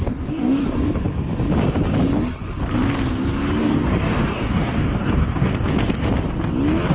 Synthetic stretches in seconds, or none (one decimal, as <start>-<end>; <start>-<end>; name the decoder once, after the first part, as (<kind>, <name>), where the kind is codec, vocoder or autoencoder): 0.0-0.6 (codec, DAC); 3.6-5.5